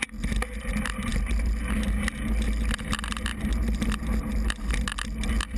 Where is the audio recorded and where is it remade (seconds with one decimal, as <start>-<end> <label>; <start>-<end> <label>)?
0.0-5.6 recorded